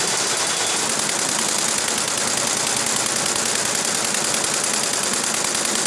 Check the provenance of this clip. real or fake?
real